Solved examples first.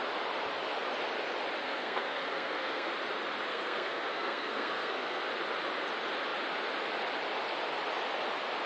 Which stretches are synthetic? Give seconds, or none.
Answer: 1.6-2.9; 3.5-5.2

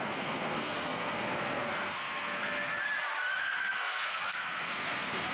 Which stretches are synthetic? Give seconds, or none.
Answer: 0.0-2.7; 3.4-5.3